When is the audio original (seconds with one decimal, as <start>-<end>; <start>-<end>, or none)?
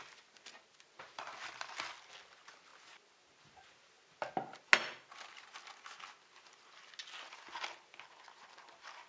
0.0-9.1